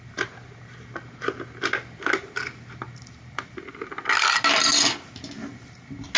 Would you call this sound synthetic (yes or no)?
no